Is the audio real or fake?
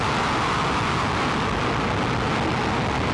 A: real